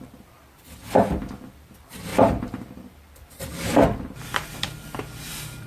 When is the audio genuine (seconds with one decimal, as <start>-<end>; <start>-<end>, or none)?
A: 0.0-2.1

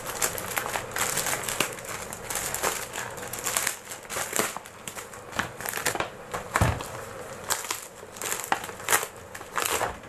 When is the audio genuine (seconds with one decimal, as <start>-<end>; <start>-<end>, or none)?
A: 0.0-5.8; 8.2-10.1

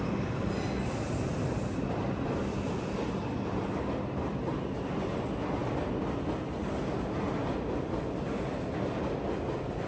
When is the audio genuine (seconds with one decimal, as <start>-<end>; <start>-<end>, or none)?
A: 0.0-9.9

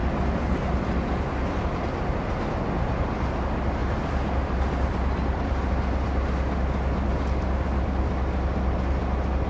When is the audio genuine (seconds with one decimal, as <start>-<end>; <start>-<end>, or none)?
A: 0.0-3.8; 5.7-9.5